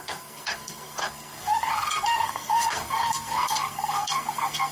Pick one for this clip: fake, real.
fake